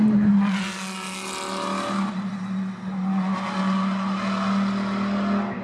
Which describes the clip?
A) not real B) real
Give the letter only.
B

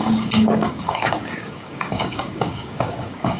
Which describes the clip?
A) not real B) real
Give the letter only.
A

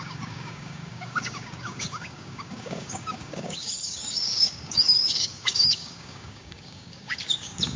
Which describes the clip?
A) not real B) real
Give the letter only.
A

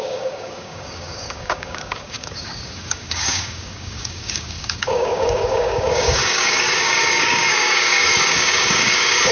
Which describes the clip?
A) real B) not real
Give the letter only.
B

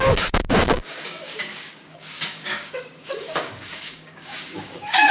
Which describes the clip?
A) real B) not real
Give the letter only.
B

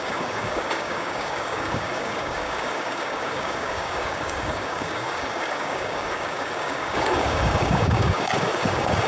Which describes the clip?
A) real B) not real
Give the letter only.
B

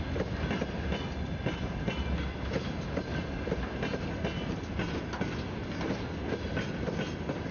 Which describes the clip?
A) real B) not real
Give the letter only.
A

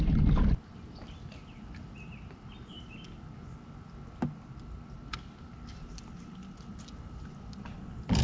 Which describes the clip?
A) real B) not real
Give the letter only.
A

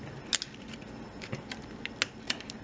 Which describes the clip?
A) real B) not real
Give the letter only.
A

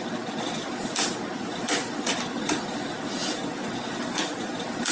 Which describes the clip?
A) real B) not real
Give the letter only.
A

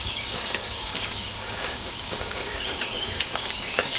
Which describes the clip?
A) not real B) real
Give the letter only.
A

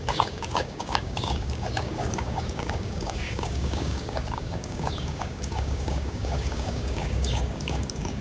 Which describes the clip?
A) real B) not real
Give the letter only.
B